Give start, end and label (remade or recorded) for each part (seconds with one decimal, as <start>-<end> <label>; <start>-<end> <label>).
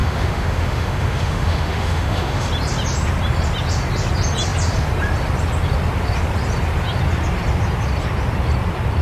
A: 0.0-2.5 remade; 2.5-9.0 recorded